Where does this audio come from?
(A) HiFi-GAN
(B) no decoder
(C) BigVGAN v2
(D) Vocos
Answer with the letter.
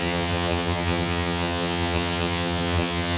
A